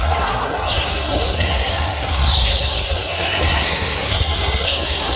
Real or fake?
fake